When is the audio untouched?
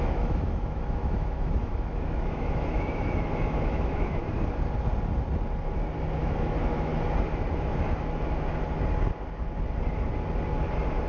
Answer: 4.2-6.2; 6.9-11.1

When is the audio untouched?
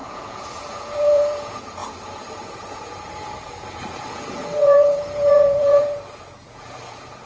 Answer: none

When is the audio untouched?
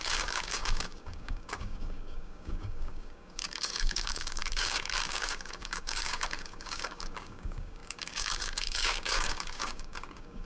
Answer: none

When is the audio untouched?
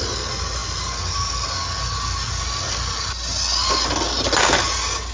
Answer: 0.0-5.1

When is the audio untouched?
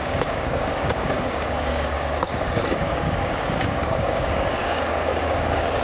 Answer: none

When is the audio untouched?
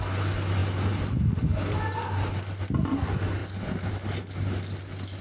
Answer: 0.0-5.2